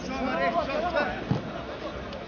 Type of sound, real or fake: real